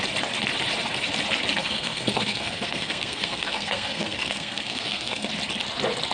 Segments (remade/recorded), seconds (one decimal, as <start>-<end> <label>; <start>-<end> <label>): 0.0-1.6 recorded; 1.6-5.3 remade; 5.3-6.1 recorded